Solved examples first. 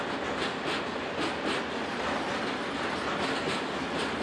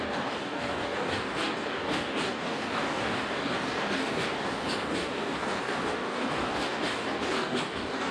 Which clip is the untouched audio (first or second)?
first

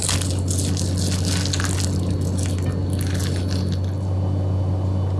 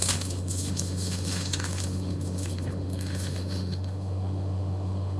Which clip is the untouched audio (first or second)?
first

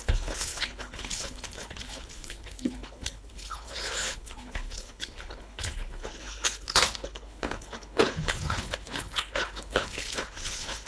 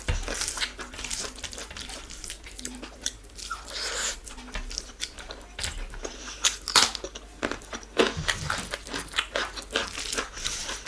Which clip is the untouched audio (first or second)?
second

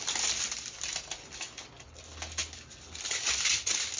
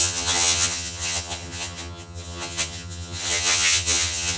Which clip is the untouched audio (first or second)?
first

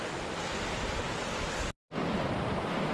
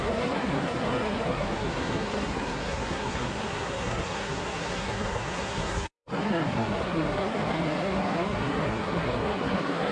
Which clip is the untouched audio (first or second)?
first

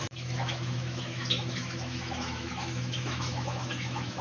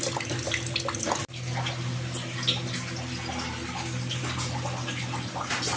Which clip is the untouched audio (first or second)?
second